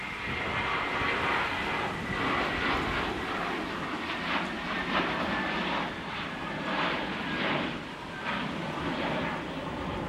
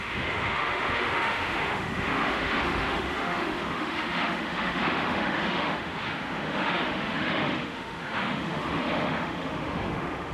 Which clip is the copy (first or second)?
second